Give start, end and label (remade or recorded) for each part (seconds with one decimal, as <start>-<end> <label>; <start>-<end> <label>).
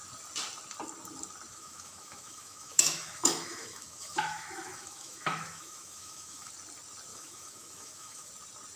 0.0-1.5 recorded; 1.5-6.5 remade; 6.5-7.1 recorded; 7.1-8.3 remade; 8.3-8.8 recorded